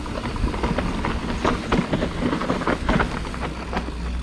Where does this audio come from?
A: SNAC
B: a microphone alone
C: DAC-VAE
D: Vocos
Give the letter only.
B